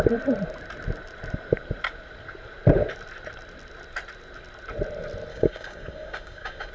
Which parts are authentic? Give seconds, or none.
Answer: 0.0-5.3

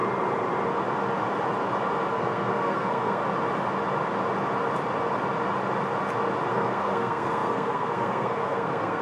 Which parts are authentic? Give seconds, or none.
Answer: 0.0-2.1; 3.2-6.5